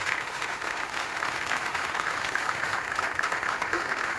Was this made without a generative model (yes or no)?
no